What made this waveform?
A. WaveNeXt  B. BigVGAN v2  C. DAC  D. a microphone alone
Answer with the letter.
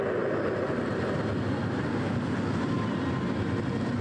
D